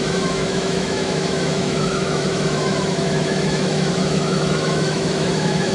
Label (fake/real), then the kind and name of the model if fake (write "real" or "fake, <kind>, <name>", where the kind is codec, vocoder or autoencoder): fake, autoencoder, DAC-VAE